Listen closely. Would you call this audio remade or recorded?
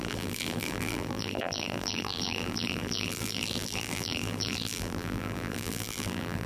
remade